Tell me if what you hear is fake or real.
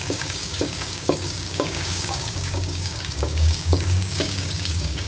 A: fake